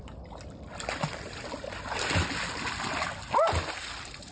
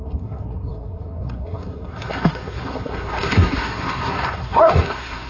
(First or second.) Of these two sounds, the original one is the first